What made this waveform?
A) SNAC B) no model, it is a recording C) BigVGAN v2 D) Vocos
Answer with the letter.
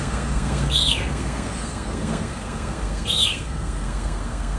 A